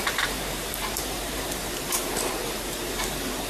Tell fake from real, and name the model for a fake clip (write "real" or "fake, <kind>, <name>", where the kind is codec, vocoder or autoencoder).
fake, vocoder, BigVGAN v2